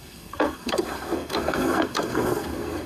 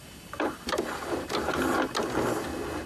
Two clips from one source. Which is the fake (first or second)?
first